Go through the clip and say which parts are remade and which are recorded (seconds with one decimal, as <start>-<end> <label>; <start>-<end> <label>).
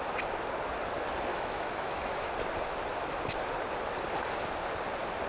0.0-1.3 recorded; 1.3-2.3 remade; 2.3-5.3 recorded